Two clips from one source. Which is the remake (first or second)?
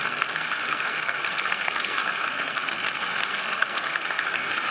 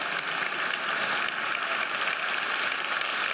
first